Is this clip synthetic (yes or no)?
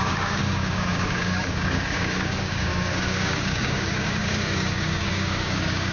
yes